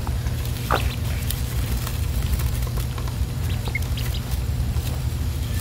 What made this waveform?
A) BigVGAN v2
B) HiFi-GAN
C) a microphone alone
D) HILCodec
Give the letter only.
A